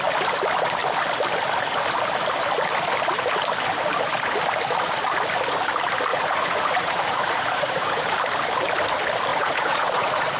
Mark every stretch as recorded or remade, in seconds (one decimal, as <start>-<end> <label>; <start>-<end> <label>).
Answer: 0.0-6.1 recorded; 6.1-8.2 remade; 8.2-9.3 recorded; 9.3-10.4 remade

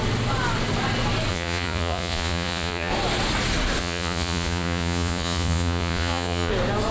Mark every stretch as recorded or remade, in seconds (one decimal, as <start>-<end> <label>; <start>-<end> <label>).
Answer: 0.0-1.3 recorded; 1.3-2.9 remade; 2.9-3.8 recorded; 3.8-6.5 remade; 6.5-6.9 recorded